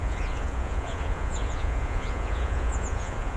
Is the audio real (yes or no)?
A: no